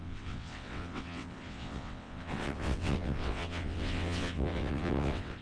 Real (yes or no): no